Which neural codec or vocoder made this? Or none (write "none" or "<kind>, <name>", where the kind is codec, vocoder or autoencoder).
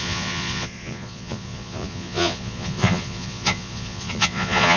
vocoder, Vocos